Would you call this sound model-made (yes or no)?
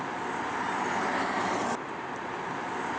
no